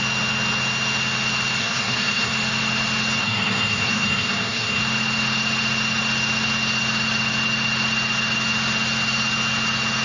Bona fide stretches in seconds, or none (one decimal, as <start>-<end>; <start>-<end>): 0.0-1.6; 2.3-3.2; 4.8-10.0